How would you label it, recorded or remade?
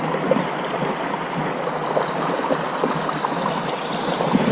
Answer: recorded